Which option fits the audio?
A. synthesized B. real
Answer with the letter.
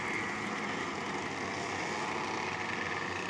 B